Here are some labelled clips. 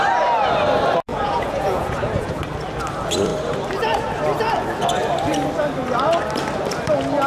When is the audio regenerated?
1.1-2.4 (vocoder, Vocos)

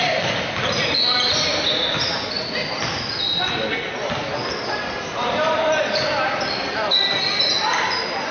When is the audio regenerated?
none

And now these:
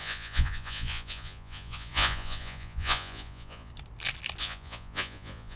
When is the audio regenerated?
0.0-3.7 (vocoder, Vocos); 4.4-5.6

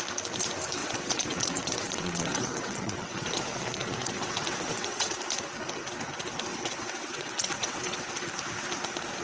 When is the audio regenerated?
0.8-5.1 (vocoder, WaveNeXt); 6.5-8.1